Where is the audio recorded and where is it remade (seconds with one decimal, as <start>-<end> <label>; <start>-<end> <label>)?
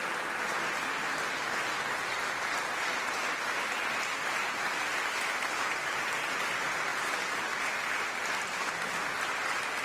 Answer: 0.0-9.8 recorded